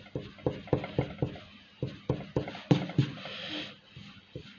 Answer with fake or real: real